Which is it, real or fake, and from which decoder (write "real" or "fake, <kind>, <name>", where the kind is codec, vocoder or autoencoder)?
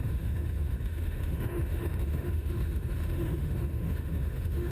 fake, autoencoder, DAC-VAE